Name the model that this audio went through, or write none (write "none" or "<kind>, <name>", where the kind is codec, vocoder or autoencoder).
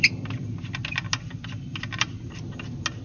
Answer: none